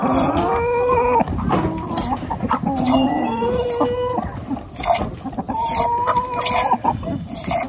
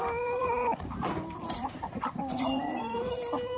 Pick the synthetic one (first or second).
second